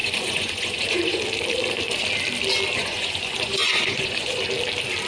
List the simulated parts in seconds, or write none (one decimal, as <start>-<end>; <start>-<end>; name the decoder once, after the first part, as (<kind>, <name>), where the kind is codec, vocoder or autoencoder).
0.0-1.2 (vocoder, Vocos); 2.8-4.4